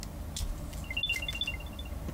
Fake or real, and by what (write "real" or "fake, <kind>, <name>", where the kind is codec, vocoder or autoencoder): real